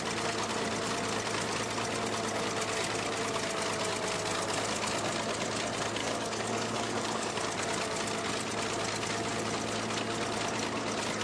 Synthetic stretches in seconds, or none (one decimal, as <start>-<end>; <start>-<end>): 6.0-7.3

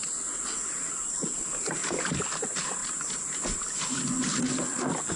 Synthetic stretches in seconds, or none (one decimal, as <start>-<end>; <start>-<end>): none